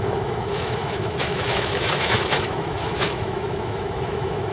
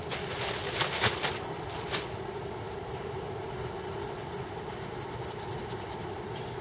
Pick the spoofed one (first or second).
first